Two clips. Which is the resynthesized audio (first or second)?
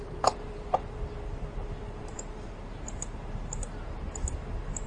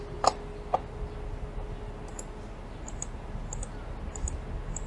first